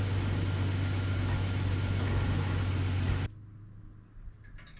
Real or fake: real